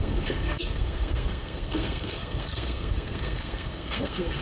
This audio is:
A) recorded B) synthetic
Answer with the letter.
B